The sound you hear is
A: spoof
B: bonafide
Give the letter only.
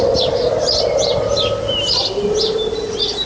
B